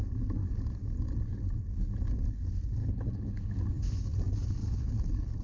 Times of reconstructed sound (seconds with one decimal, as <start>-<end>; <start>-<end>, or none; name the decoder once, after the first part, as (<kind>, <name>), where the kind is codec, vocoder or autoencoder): 2.8-3.5 (codec, HILCodec); 4.6-5.4